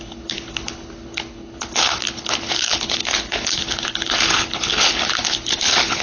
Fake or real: fake